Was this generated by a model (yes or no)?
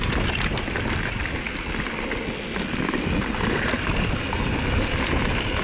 no